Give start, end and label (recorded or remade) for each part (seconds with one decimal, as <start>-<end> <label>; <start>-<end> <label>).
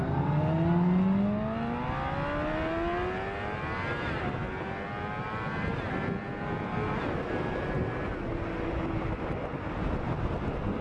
0.0-10.8 recorded